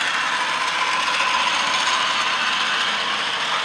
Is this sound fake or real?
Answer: real